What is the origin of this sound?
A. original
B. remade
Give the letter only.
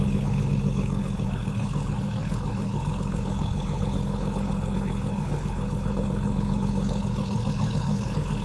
B